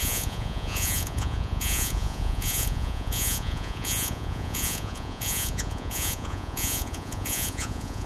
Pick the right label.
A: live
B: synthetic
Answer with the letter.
B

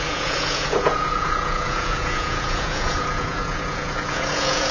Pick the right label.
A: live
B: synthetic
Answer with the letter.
B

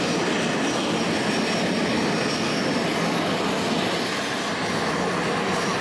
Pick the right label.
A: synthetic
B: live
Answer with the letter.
B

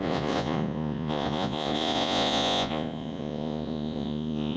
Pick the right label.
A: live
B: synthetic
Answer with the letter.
B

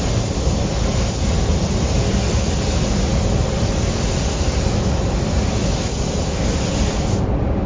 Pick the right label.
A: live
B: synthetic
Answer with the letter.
A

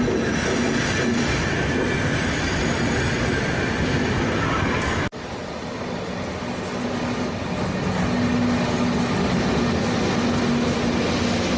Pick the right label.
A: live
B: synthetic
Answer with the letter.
A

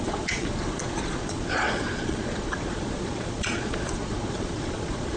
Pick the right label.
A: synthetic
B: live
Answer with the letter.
A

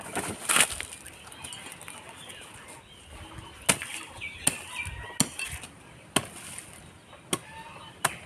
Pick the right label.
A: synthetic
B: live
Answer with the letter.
B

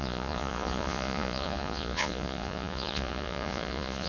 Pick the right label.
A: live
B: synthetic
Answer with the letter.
B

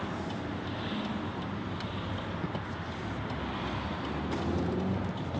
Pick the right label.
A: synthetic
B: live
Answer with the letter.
B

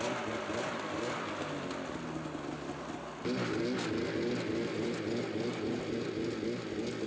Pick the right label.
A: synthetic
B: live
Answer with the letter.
B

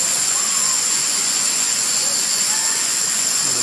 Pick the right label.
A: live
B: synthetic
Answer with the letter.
B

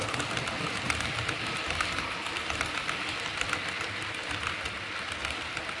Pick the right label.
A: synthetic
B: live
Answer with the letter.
B